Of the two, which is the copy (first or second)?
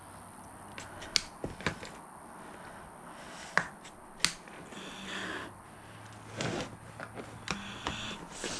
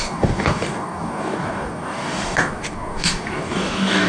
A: second